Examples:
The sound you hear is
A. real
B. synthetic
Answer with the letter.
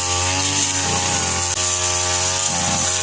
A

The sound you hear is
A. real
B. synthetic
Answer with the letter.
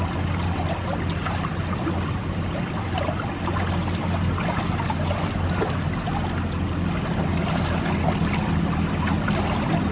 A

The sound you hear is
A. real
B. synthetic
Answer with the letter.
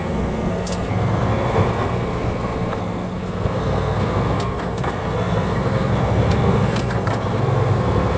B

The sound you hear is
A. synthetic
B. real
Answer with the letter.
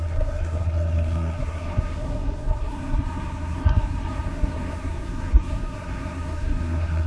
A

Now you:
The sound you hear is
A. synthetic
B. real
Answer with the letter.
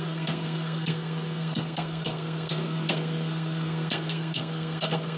A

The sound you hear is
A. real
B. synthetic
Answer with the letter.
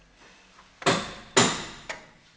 A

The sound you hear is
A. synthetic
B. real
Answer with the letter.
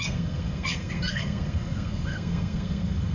A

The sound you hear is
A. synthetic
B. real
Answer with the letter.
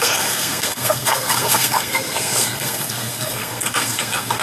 A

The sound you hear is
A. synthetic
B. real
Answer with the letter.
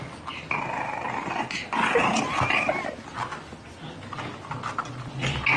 B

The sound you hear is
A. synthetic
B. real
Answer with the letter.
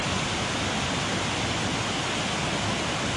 B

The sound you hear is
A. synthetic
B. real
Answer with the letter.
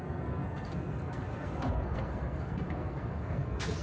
A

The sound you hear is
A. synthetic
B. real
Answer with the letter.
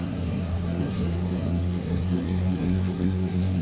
A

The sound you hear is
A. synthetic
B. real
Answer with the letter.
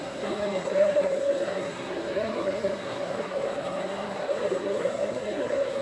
A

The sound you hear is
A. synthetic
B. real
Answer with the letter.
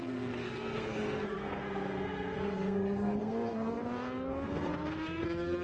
A